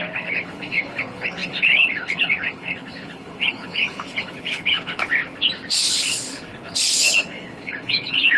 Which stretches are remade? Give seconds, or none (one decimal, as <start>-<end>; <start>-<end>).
0.0-5.0; 5.9-8.4